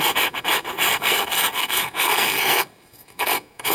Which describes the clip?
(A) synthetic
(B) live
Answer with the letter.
A